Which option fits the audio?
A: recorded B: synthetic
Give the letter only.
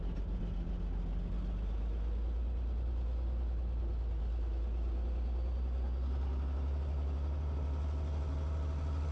A